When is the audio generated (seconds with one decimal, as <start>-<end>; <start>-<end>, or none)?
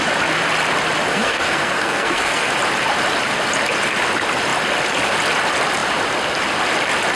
1.1-2.5